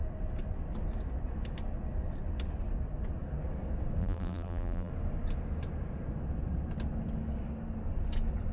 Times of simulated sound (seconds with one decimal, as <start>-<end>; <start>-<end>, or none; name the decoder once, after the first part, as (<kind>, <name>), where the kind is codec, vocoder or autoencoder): 4.0-4.9 (vocoder, BigVGAN v2)